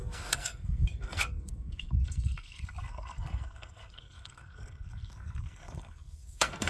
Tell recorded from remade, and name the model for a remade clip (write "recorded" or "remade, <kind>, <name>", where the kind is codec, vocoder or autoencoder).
remade, codec, SNAC